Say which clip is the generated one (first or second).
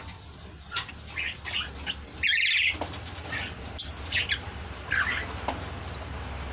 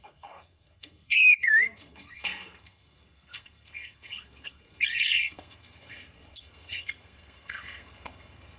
second